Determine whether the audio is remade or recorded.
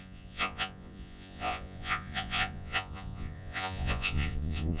remade